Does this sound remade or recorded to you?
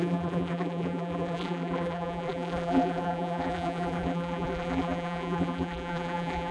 remade